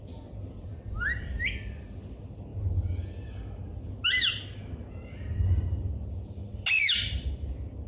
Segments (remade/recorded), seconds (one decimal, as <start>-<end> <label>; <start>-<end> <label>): 0.0-7.9 recorded